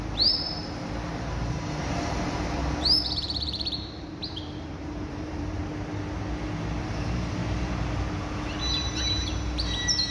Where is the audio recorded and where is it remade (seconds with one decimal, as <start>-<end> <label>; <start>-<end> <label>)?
0.0-5.6 remade; 5.6-6.8 recorded; 6.8-7.4 remade; 7.4-8.7 recorded; 8.7-10.1 remade